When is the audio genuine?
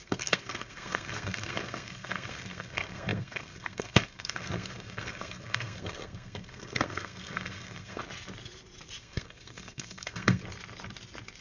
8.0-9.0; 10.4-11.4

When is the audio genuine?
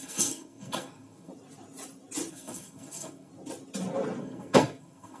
1.3-2.3; 3.3-4.2